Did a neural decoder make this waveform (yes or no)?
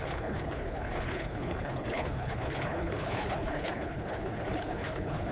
yes